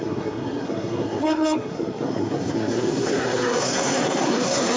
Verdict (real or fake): fake